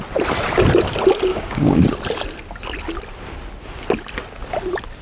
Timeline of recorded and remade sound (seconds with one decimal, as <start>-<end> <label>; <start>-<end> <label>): 0.0-1.3 recorded; 1.3-1.8 remade; 1.8-5.0 recorded